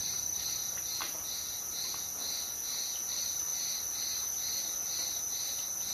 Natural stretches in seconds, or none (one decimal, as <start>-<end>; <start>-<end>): 0.6-3.1